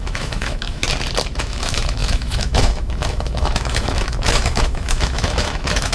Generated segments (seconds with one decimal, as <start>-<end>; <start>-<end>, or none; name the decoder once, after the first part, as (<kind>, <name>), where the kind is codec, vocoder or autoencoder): 0.0-0.8 (autoencoder, DAC-VAE); 1.4-5.9